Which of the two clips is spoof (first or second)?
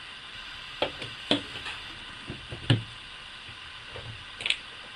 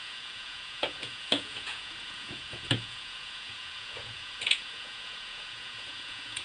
second